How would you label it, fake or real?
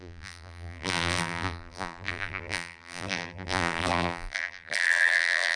fake